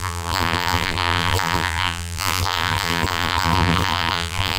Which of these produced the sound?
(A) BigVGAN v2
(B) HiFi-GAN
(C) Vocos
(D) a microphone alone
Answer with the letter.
A